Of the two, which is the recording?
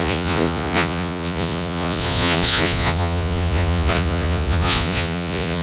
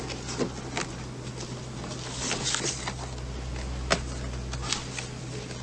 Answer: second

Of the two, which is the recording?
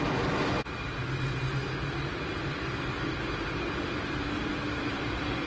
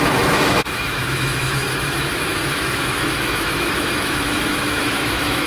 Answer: first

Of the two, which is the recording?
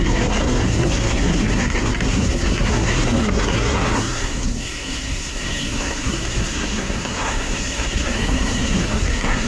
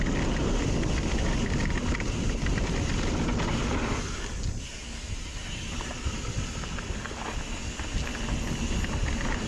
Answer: second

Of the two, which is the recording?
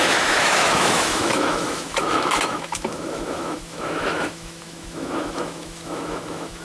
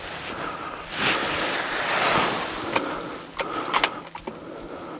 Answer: second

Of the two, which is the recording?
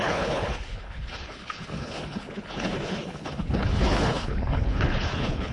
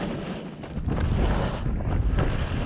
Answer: second